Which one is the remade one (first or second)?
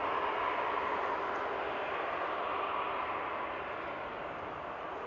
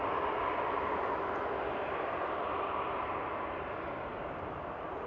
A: second